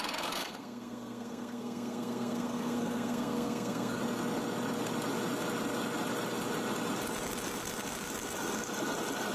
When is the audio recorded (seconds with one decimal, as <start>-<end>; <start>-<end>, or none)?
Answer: 0.0-0.4; 4.0-9.3